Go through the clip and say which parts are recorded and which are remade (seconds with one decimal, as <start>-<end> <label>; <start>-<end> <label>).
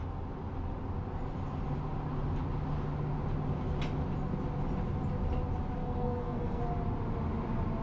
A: 0.0-5.8 recorded; 5.8-6.6 remade; 6.6-7.8 recorded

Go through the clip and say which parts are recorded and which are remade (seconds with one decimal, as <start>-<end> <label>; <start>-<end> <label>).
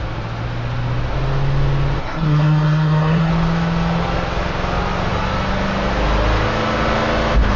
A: 0.0-2.0 recorded; 2.0-3.3 remade; 3.3-7.6 recorded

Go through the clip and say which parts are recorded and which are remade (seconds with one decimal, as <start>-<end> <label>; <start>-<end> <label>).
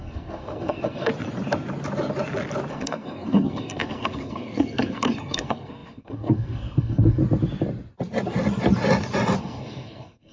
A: 0.0-1.1 remade; 1.1-2.7 recorded; 2.7-7.2 remade; 7.2-9.4 recorded; 9.4-10.3 remade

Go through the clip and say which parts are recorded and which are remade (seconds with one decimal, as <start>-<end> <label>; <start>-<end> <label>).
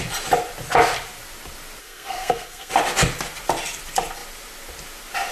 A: 0.0-1.8 recorded; 1.8-2.7 remade; 2.7-5.3 recorded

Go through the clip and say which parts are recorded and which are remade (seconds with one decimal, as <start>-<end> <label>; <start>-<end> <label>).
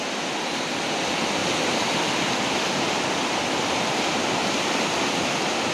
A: 0.0-5.7 recorded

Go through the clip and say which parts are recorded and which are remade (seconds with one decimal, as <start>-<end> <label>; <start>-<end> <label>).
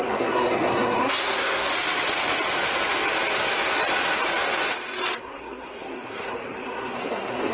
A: 0.0-1.7 remade; 1.7-5.2 recorded; 5.2-7.5 remade